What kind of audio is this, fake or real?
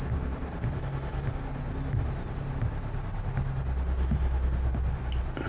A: real